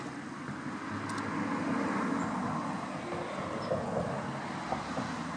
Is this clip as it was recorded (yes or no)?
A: yes